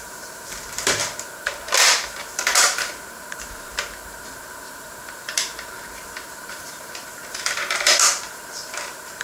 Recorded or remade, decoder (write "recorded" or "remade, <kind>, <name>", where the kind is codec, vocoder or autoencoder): remade, vocoder, BigVGAN v2